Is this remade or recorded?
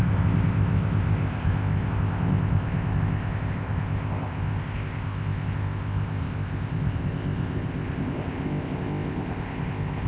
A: remade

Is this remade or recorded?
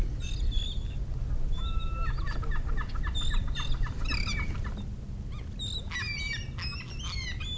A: recorded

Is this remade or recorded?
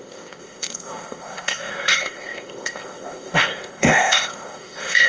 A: remade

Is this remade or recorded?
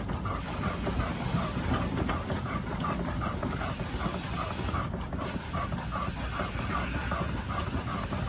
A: recorded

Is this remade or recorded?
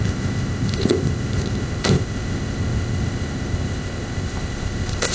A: remade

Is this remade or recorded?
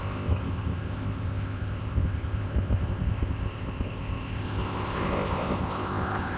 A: remade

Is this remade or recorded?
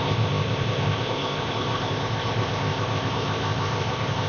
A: remade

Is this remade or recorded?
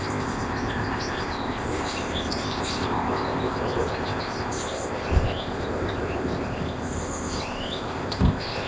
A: remade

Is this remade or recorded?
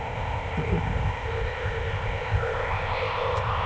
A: remade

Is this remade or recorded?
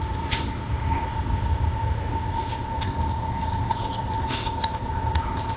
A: remade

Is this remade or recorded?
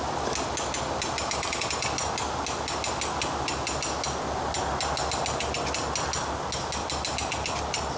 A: recorded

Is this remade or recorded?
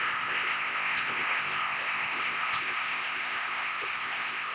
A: remade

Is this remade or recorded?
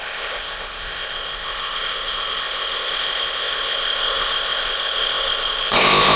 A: remade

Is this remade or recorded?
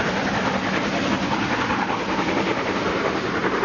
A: recorded